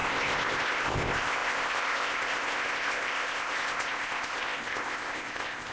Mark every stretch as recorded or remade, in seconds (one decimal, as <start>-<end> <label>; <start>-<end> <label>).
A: 0.0-5.7 remade